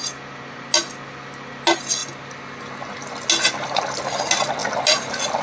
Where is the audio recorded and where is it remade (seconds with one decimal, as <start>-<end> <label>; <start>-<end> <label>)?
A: 0.0-5.4 recorded